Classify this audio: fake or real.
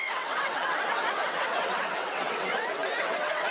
fake